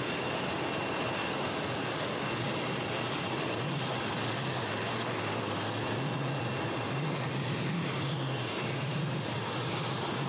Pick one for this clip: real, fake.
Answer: real